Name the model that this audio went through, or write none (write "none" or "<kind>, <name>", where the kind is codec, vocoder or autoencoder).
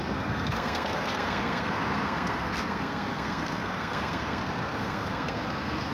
codec, SNAC